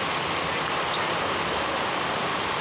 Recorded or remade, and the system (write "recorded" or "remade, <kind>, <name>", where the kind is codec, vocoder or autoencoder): recorded